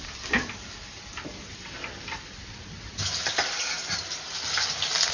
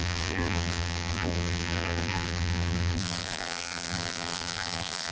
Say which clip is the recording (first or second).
first